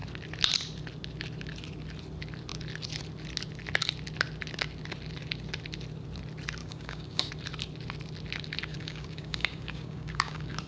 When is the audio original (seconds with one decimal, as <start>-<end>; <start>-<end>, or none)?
0.0-6.6; 7.3-8.7